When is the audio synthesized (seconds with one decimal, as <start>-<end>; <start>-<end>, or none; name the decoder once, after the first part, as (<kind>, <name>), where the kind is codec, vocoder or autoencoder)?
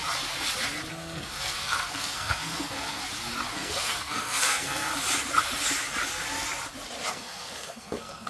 0.9-3.0 (codec, SNAC); 3.5-4.9; 7.1-8.3